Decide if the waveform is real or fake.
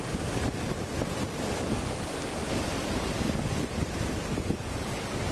real